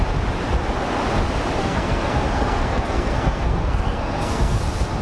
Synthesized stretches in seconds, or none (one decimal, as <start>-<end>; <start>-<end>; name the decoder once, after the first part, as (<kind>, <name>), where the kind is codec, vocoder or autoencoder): 1.6-4.6 (codec, SNAC)